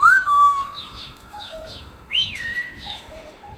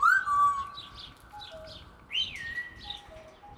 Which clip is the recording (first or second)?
second